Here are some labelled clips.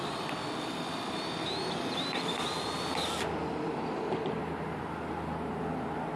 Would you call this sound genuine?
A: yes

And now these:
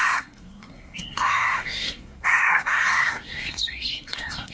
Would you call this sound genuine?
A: no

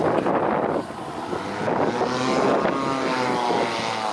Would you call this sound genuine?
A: yes